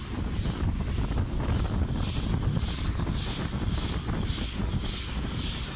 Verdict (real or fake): real